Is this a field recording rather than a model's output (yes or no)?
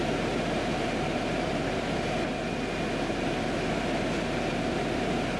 yes